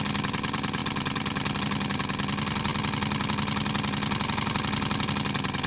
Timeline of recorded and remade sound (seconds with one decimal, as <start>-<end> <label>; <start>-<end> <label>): 0.0-5.7 recorded